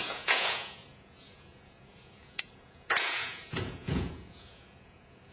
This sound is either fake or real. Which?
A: fake